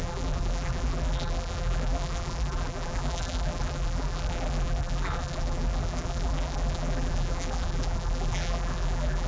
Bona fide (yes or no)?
no